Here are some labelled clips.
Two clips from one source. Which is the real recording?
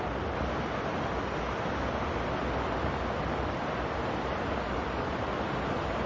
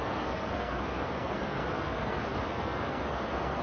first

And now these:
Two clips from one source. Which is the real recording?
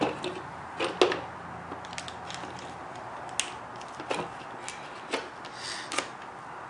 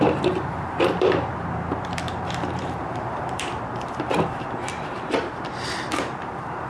first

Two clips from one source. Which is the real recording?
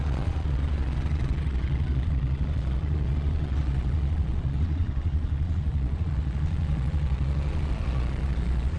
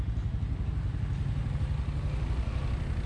second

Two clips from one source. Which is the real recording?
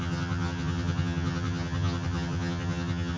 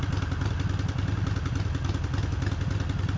second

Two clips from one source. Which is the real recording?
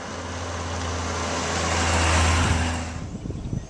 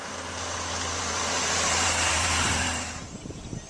first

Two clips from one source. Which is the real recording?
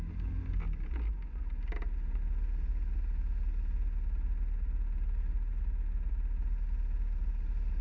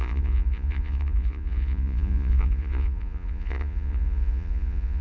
first